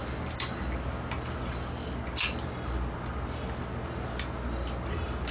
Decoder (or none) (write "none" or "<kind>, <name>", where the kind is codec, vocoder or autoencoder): none